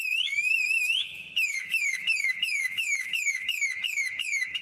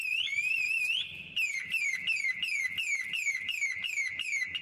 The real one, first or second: second